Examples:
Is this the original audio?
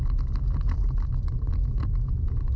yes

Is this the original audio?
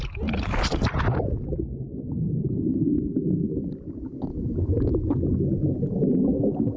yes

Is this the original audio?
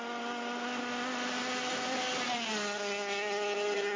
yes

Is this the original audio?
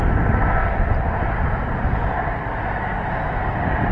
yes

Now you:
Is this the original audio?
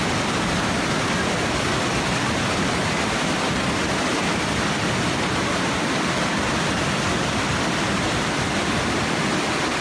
yes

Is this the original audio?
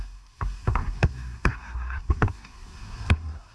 no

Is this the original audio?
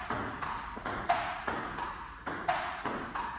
no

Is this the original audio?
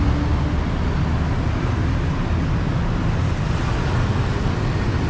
yes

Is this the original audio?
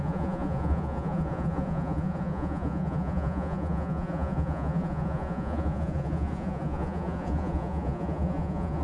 no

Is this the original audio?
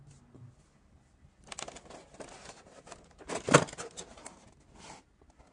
yes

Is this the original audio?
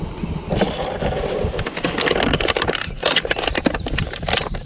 yes